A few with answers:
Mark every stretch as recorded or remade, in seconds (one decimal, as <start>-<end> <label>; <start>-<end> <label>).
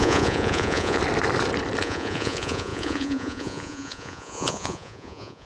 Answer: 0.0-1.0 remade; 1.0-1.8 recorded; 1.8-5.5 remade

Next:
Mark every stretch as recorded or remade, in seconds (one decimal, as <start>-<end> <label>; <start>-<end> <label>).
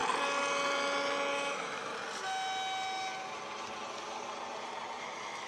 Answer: 0.0-1.3 recorded; 1.3-1.9 remade; 1.9-5.0 recorded; 5.0-5.5 remade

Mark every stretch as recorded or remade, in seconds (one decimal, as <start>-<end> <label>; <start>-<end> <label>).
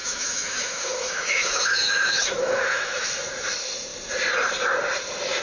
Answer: 0.0-3.1 remade; 3.1-5.4 recorded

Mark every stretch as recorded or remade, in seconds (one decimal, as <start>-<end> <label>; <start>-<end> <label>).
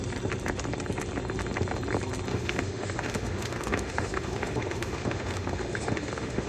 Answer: 0.0-2.3 recorded; 2.3-6.5 remade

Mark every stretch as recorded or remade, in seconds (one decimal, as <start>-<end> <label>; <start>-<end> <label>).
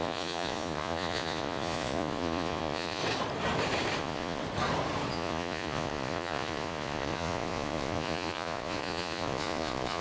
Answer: 0.0-3.0 remade; 3.0-4.0 recorded; 4.0-4.4 remade; 4.4-5.1 recorded; 5.1-10.0 remade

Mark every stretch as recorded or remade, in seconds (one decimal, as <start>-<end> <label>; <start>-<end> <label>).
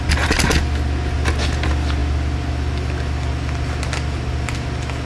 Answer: 0.0-5.1 recorded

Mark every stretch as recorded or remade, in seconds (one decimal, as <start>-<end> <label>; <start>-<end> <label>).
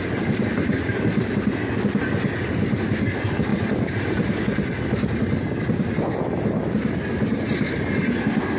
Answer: 0.0-8.6 recorded